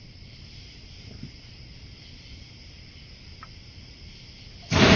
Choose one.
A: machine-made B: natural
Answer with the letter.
B